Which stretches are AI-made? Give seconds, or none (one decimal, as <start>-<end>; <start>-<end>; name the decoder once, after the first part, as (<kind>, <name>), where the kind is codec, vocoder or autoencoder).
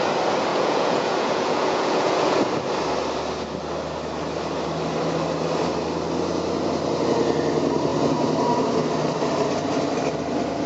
0.5-2.4 (vocoder, Vocos)